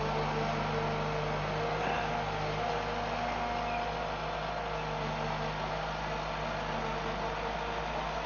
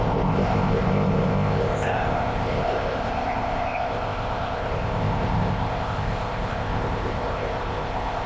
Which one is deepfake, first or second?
second